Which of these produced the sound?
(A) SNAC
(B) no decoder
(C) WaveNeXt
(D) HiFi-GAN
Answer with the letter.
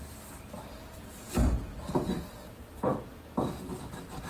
B